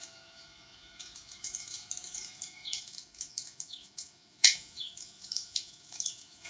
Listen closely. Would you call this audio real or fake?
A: fake